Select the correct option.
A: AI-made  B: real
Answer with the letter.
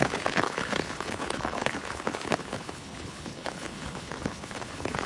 A